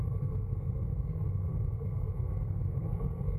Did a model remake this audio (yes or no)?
yes